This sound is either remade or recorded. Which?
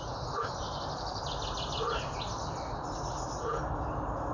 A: recorded